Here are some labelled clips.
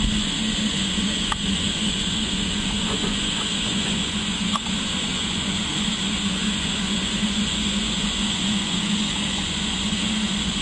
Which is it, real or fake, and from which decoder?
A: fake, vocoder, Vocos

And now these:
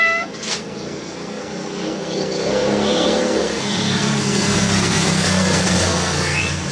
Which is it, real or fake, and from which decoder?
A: fake, codec, SNAC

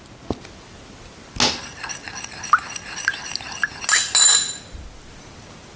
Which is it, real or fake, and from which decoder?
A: real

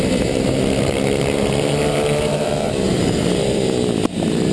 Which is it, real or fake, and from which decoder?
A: fake, vocoder, BigVGAN v2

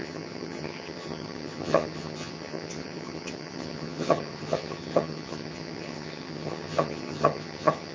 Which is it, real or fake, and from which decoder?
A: fake, vocoder, HiFi-GAN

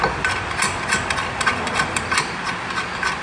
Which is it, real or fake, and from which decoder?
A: real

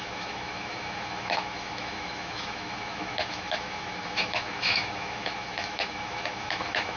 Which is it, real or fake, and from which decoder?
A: fake, autoencoder, DAC-VAE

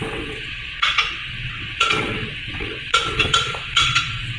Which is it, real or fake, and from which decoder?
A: fake, vocoder, WaveNeXt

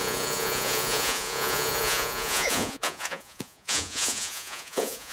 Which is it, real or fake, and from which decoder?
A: fake, vocoder, Vocos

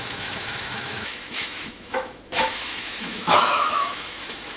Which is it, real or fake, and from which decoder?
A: fake, autoencoder, DAC-VAE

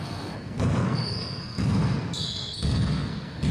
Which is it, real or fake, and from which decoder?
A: fake, codec, SNAC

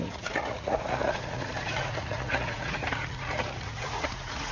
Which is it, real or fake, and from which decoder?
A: fake, vocoder, Vocos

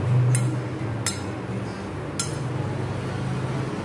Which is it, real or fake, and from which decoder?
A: real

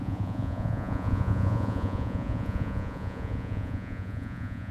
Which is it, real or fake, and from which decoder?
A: fake, vocoder, Vocos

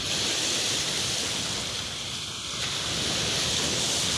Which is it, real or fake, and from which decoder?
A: real